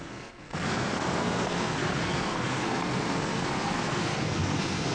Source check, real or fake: fake